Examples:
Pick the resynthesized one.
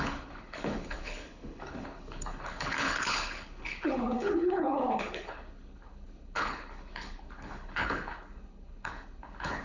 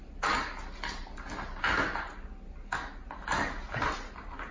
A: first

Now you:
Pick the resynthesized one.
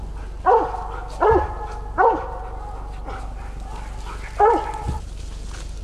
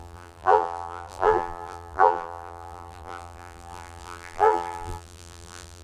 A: second